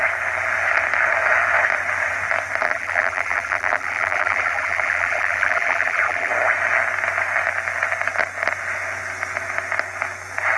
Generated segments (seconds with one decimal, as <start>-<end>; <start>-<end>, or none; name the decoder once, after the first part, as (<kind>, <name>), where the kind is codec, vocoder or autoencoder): 2.6-6.3 (vocoder, BigVGAN v2)